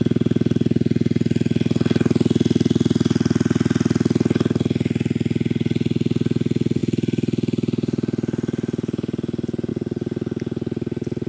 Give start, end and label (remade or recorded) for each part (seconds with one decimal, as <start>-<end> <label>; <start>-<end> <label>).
0.0-11.3 recorded